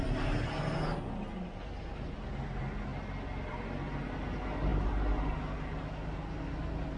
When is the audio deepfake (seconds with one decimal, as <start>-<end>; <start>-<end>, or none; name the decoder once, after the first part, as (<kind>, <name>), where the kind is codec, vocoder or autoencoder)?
none